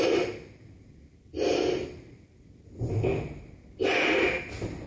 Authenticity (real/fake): real